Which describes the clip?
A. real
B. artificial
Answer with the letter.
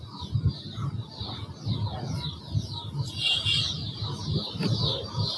A